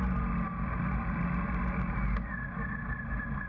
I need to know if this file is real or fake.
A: real